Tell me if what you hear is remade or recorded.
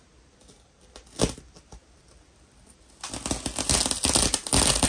recorded